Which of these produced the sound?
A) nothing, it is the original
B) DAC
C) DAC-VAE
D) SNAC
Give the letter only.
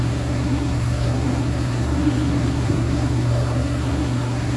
D